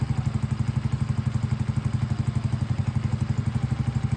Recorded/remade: recorded